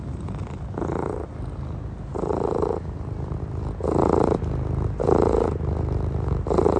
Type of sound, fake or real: real